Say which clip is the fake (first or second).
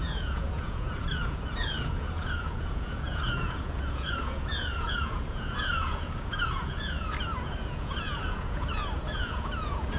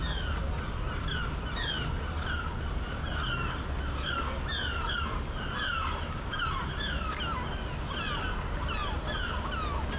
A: first